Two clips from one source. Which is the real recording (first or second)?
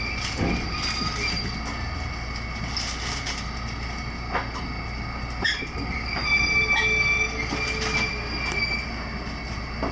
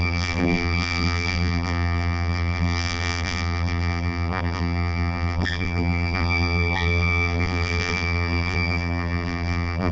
first